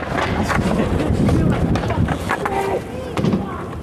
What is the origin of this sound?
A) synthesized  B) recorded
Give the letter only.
B